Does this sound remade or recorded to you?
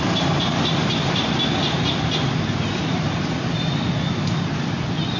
remade